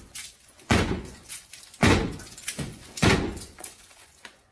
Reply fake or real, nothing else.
fake